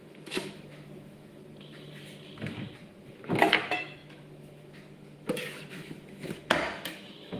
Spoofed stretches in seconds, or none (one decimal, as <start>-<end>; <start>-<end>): 0.0-1.4; 3.0-7.4